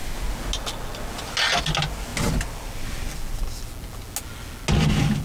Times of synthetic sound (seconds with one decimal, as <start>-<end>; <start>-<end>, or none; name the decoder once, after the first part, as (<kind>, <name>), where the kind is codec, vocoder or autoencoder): none

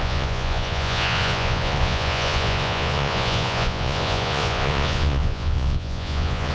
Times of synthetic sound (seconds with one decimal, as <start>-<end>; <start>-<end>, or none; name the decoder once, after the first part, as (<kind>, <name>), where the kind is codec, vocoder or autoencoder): 0.0-6.5 (vocoder, Vocos)